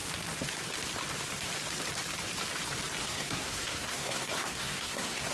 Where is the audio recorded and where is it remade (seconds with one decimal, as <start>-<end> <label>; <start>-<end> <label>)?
0.0-3.0 recorded; 3.0-5.3 remade